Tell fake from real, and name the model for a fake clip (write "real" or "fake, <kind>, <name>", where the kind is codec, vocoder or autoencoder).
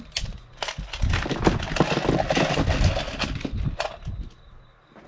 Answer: real